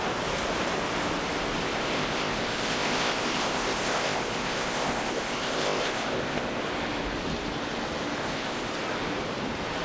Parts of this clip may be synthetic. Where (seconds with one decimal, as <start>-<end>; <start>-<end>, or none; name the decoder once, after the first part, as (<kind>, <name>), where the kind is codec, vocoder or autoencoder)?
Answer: 1.6-6.6 (codec, ZipCodec); 8.2-8.7